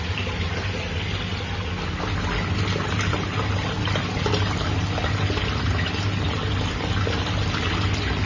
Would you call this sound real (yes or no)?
yes